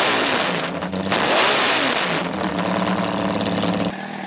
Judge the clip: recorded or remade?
recorded